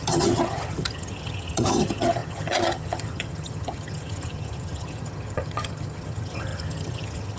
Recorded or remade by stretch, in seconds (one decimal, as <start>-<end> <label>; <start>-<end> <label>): 0.0-7.4 remade